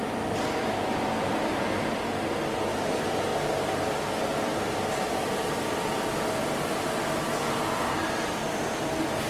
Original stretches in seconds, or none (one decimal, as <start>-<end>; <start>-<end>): 1.8-2.9; 3.3-3.9